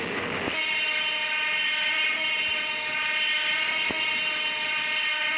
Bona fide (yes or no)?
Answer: yes